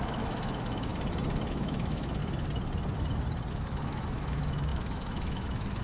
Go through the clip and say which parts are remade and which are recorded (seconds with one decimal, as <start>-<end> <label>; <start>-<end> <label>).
0.0-0.9 remade; 0.9-1.5 recorded; 1.5-2.2 remade; 2.2-3.5 recorded; 3.5-5.8 remade